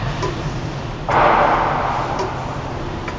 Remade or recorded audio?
recorded